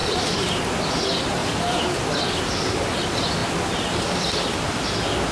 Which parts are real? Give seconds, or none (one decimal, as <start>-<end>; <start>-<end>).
0.6-1.4; 1.9-5.3